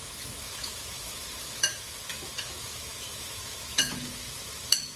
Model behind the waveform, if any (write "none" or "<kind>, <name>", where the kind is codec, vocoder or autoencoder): autoencoder, DAC-VAE